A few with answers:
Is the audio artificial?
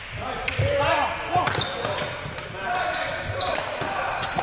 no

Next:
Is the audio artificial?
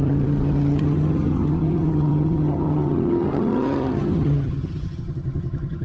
yes